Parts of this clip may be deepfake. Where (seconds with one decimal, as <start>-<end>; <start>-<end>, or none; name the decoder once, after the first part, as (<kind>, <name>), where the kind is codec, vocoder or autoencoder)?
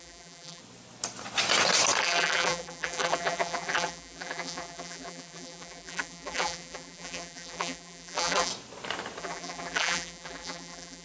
0.0-0.6 (vocoder, BigVGAN v2); 2.0-8.5; 9.2-11.0